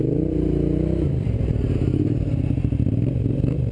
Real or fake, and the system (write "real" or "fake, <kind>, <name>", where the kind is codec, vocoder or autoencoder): fake, vocoder, BigVGAN v2